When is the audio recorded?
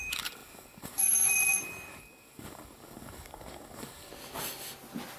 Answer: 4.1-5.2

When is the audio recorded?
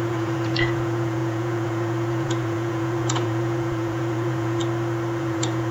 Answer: 4.6-5.2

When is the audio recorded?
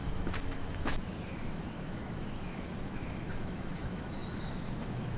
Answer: none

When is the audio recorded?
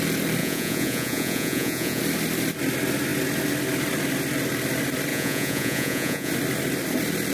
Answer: 0.0-0.4; 2.0-5.1; 6.3-7.3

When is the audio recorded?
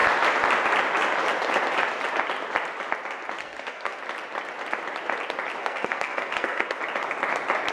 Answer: 0.0-3.4; 4.0-5.6; 6.8-7.7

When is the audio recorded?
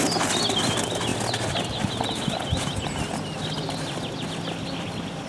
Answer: 0.0-5.3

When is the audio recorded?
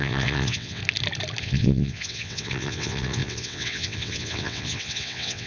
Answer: 0.8-1.4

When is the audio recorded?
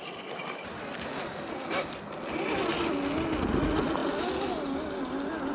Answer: 0.0-5.5